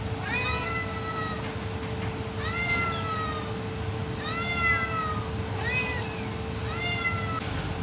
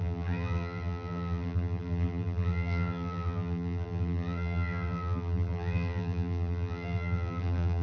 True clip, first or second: first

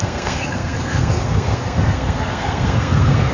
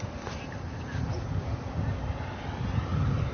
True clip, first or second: second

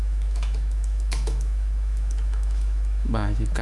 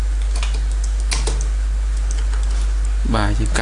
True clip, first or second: second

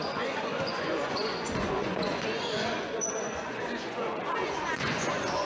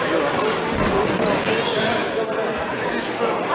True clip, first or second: second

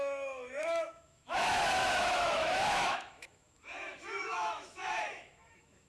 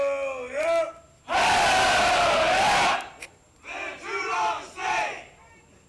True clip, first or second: second